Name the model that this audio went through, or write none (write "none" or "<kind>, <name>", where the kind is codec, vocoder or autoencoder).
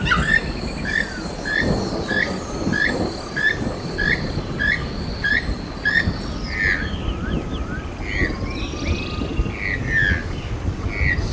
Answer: none